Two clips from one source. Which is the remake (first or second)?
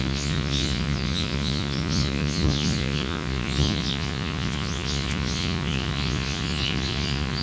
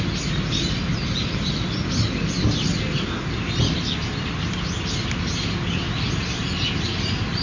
first